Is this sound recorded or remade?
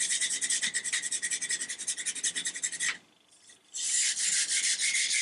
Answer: recorded